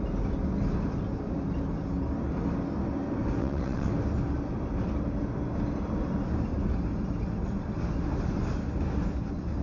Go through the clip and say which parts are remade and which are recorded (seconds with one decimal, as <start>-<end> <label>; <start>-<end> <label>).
0.0-3.4 recorded; 3.4-3.9 remade; 3.9-9.6 recorded